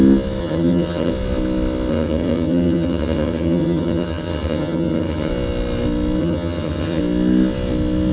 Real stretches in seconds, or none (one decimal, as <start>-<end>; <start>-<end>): 0.0-0.4; 1.1-1.9; 5.3-6.2; 7.0-8.1